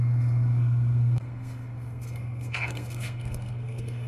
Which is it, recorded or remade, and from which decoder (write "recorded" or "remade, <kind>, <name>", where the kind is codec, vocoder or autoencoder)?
remade, codec, SNAC